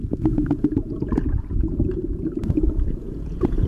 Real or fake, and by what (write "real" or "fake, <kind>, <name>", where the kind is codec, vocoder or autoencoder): fake, vocoder, Vocos